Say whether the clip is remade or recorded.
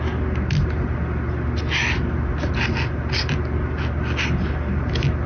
recorded